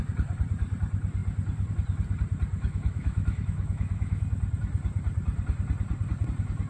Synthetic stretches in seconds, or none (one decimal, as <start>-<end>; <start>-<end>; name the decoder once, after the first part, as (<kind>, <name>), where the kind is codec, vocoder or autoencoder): 2.6-4.2 (autoencoder, DAC-VAE)